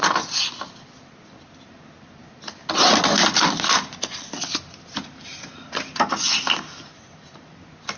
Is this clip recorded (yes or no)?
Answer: yes